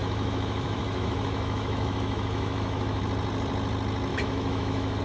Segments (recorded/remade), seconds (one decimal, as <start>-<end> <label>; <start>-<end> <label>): 0.0-3.0 remade; 3.0-4.1 recorded; 4.1-5.0 remade